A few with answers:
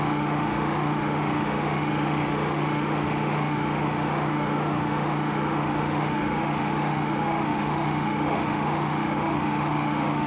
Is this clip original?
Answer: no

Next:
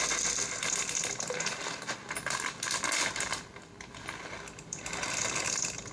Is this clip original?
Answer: yes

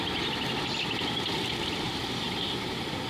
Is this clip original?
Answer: yes